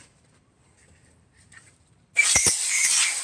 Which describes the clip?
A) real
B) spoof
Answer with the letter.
B